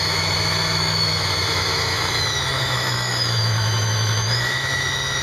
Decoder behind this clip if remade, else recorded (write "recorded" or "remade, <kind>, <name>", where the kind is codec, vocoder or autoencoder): remade, autoencoder, DAC-VAE